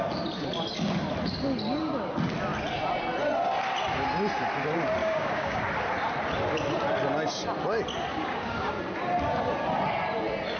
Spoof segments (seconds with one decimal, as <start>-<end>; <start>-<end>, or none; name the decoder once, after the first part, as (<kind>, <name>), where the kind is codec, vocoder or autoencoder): 5.0-5.6 (codec, DAC); 8.1-8.7